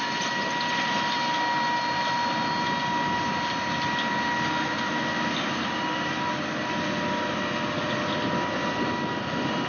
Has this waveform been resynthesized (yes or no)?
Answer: no